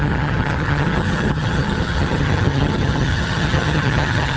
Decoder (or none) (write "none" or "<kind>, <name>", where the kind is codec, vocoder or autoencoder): vocoder, HiFi-GAN